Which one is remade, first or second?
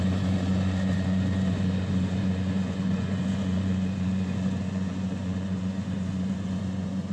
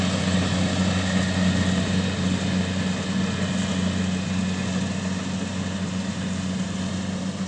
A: first